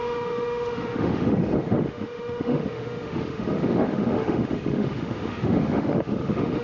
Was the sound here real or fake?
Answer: fake